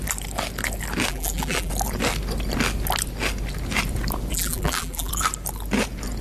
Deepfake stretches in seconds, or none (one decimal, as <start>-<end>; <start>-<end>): 1.1-1.7; 4.3-5.1